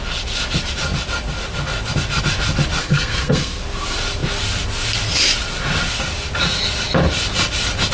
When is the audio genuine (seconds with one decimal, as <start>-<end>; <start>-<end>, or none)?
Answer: 0.0-2.8; 3.6-7.9